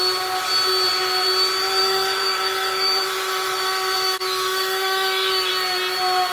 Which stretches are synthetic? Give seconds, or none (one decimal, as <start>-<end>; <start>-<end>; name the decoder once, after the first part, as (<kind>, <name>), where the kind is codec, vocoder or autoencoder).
1.8-5.5 (autoencoder, DAC-VAE)